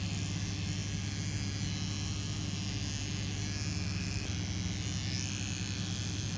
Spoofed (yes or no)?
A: no